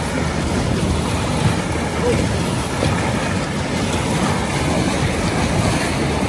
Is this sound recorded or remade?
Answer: recorded